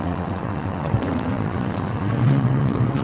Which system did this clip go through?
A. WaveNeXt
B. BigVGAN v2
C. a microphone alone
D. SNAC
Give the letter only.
A